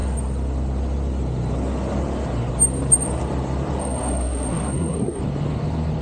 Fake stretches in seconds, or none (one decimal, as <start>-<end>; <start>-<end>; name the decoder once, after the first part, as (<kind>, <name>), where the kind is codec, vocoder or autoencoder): 3.8-5.2 (codec, SNAC)

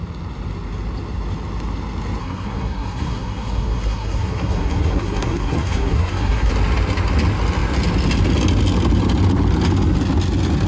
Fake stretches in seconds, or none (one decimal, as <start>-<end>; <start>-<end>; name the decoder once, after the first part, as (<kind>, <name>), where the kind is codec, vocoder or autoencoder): 2.2-6.5 (codec, SNAC)

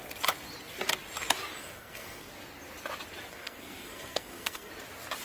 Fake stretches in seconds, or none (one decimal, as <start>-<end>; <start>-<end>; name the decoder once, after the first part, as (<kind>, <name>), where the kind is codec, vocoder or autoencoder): 1.6-2.3 (codec, SNAC); 3.3-4.7

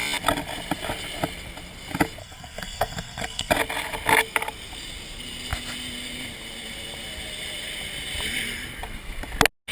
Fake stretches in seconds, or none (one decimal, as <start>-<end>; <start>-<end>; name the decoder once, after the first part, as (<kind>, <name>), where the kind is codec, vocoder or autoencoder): 2.2-3.5 (codec, SNAC)

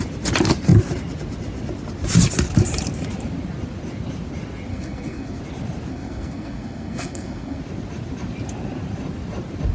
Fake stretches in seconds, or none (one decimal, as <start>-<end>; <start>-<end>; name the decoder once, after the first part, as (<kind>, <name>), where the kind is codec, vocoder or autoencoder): 4.7-5.4 (codec, SNAC); 5.9-7.6

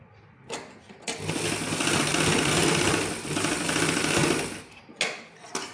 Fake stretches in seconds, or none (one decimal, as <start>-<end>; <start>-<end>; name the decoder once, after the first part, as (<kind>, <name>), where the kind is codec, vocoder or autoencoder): none

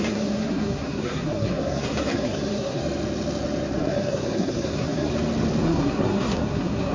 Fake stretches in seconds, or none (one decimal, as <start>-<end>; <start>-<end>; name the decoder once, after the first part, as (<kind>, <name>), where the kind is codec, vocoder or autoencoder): 0.0-2.8 (codec, SNAC); 3.8-5.1; 5.6-6.9